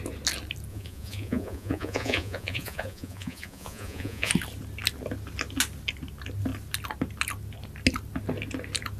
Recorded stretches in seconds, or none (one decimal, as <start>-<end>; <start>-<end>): 0.0-0.7; 4.3-9.0